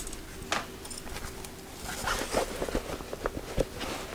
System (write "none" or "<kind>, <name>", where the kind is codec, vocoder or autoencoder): none